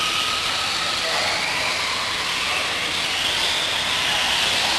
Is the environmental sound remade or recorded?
recorded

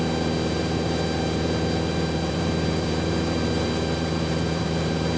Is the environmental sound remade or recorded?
remade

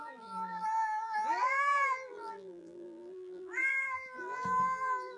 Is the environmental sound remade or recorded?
remade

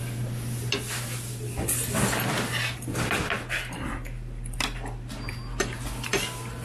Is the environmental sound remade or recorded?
recorded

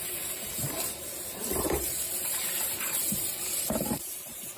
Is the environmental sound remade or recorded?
remade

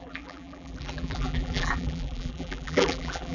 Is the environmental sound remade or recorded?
remade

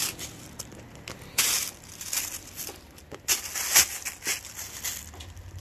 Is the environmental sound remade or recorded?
recorded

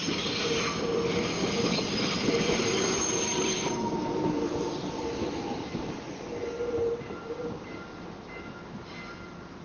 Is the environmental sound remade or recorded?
remade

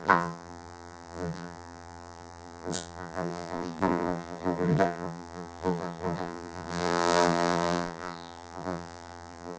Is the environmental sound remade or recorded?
remade